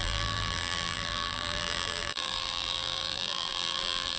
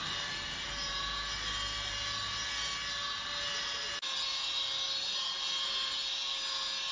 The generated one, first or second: first